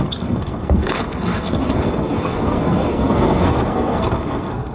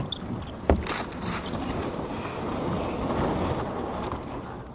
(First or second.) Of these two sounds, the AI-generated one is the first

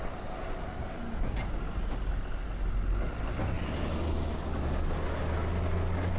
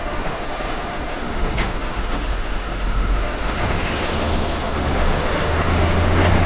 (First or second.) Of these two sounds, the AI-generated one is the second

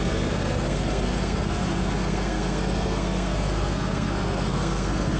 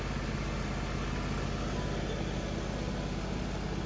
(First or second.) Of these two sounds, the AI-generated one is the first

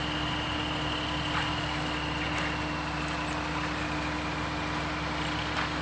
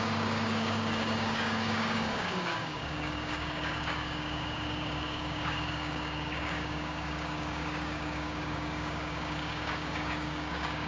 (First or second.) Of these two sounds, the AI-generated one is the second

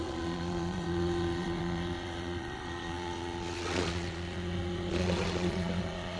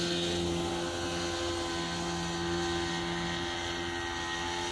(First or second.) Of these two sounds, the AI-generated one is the first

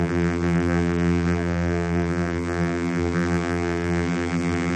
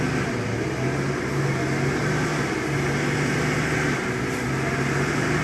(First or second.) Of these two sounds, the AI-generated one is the first